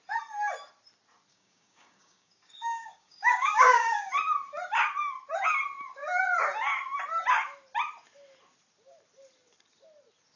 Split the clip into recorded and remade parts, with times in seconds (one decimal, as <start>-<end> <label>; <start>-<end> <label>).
0.0-1.3 recorded; 1.3-4.1 remade; 4.1-10.4 recorded

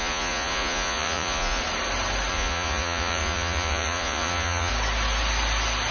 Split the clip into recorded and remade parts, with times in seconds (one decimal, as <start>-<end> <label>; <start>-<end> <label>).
0.0-1.6 remade; 1.6-2.3 recorded; 2.3-4.7 remade; 4.7-5.9 recorded

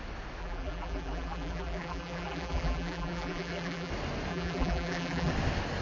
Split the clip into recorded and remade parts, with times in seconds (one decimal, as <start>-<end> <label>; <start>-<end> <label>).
0.0-0.4 recorded; 0.4-3.9 remade; 3.9-4.3 recorded; 4.3-5.3 remade; 5.3-5.8 recorded

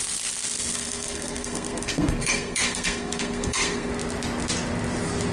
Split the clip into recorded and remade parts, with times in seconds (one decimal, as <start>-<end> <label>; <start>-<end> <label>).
0.0-0.7 recorded; 0.7-3.9 remade; 3.9-5.3 recorded